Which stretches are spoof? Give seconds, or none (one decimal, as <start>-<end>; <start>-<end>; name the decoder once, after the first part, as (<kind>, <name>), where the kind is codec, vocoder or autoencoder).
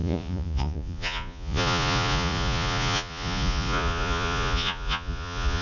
0.0-5.6 (vocoder, Vocos)